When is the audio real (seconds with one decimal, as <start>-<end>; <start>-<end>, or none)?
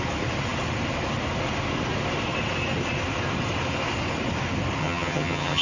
0.0-4.8